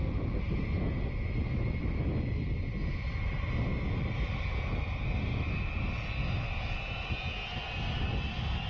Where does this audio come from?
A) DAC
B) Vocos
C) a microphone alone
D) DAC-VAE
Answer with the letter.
C